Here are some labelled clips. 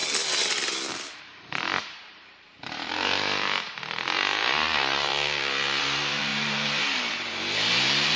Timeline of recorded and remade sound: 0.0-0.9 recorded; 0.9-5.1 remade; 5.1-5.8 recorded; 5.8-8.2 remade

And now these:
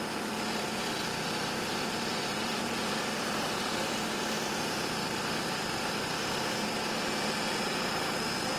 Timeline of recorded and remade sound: 0.0-0.7 recorded; 0.7-5.9 remade; 5.9-8.6 recorded

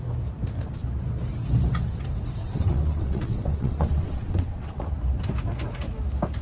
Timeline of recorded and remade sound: 0.0-2.4 recorded; 2.4-4.9 remade; 4.9-6.4 recorded